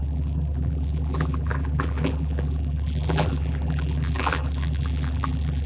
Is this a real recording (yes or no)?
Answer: no